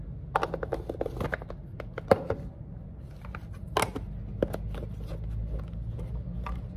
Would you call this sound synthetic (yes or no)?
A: no